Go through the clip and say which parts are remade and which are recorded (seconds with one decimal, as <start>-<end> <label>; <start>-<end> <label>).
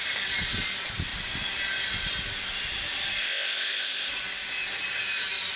0.0-3.2 recorded; 3.2-4.1 remade; 4.1-5.6 recorded